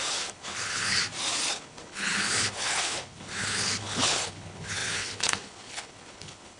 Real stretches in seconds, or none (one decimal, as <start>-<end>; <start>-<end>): 1.0-1.5